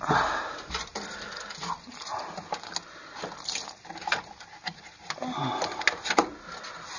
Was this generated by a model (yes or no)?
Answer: no